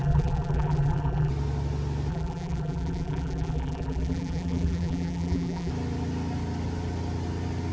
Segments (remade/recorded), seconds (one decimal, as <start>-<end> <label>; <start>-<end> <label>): 0.0-1.3 remade; 1.3-2.1 recorded; 2.1-5.7 remade; 5.7-7.7 recorded